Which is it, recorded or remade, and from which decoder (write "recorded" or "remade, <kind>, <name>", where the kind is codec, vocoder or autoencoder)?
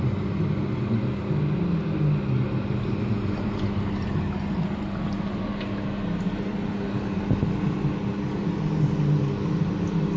recorded